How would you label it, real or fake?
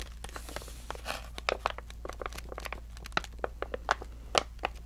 real